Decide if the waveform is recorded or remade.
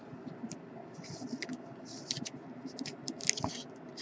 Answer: recorded